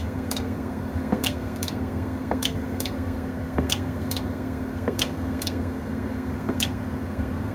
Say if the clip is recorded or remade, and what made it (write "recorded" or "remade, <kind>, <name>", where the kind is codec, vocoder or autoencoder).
remade, codec, SNAC